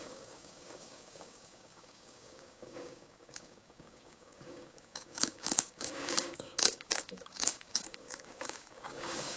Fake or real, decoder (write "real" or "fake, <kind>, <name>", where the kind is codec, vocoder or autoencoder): fake, codec, DAC